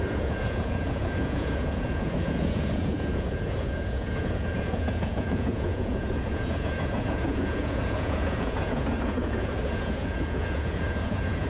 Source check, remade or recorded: remade